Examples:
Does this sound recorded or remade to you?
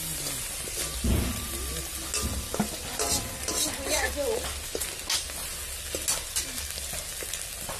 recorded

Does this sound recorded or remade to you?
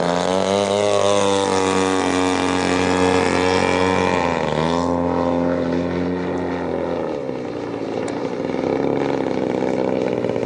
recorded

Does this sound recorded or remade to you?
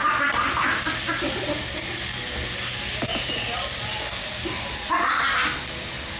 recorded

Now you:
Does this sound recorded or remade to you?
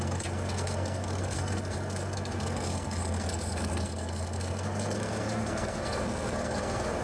remade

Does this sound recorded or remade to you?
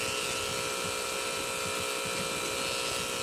recorded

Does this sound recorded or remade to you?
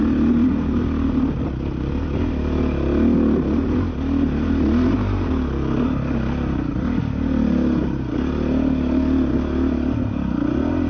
recorded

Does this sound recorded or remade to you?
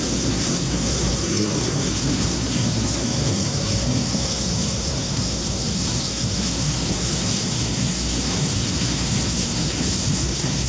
remade